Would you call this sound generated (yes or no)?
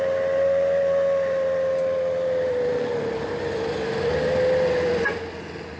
no